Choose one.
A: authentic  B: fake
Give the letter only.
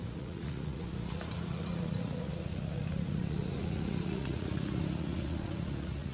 B